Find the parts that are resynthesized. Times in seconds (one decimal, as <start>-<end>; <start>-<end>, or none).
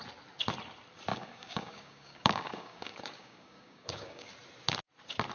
1.1-4.3